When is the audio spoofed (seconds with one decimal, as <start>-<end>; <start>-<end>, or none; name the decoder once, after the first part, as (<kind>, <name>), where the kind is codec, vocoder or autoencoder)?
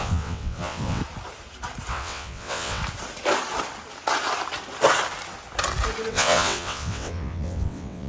0.0-1.0 (vocoder, WaveNeXt); 1.9-2.8; 6.1-8.1